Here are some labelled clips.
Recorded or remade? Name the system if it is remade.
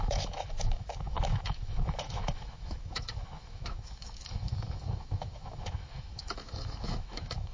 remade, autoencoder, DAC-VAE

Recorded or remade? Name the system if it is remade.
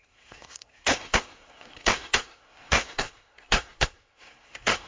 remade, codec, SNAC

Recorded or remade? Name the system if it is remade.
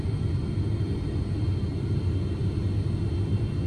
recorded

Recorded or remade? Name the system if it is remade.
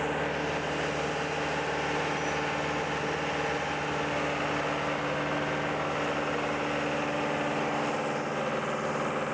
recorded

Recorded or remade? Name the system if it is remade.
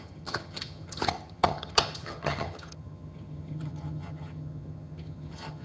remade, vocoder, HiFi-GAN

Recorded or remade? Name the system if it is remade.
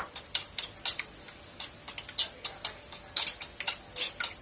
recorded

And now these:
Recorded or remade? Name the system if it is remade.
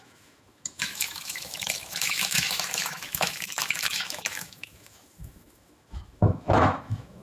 remade, autoencoder, DAC-VAE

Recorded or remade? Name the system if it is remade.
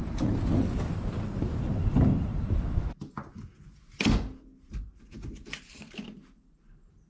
recorded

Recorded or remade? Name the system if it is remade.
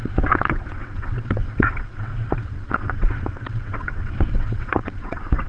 remade, vocoder, WaveNeXt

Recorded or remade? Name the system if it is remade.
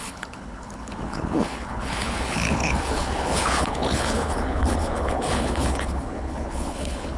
remade, codec, HILCodec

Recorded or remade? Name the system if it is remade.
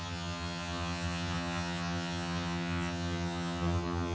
remade, vocoder, HiFi-GAN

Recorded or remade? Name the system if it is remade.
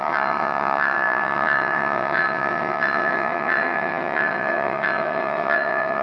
remade, vocoder, WaveNeXt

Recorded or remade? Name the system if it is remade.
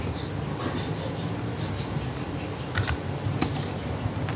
recorded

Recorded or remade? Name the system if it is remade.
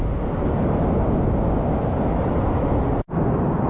recorded